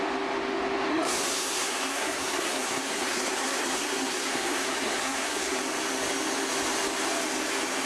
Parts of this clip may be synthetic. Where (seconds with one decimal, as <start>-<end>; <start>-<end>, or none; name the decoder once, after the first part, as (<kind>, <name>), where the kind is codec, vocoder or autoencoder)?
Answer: 0.9-5.6 (codec, SNAC)